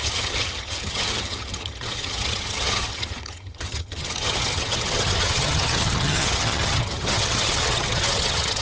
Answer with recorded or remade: remade